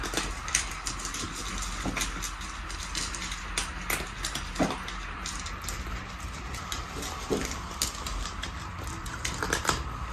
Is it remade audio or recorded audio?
recorded